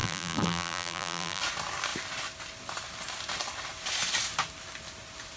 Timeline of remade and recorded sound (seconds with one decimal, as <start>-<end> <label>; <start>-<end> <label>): 0.0-1.4 remade; 1.4-5.4 recorded